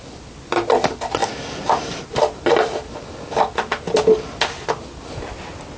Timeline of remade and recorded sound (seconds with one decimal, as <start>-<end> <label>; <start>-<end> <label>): 0.0-5.8 recorded